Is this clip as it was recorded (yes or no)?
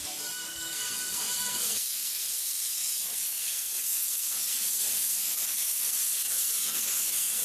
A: no